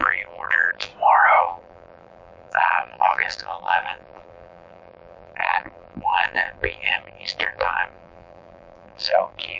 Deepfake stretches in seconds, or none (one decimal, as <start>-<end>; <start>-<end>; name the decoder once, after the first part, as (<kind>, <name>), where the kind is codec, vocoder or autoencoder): 0.0-0.9 (vocoder, BigVGAN v2); 1.4-9.6